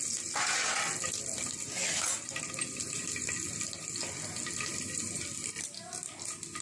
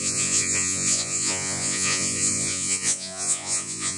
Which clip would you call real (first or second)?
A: first